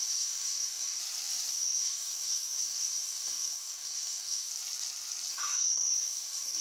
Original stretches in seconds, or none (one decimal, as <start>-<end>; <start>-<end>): 1.0-1.5; 4.5-5.3